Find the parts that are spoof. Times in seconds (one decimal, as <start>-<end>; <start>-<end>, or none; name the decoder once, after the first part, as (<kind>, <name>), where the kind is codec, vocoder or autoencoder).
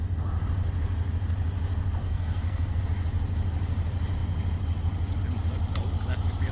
2.0-2.8 (codec, SNAC)